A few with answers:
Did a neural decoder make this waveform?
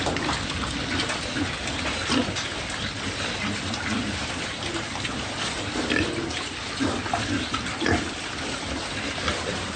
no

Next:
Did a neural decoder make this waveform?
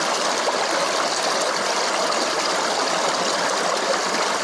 no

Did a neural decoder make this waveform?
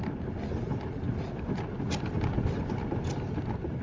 no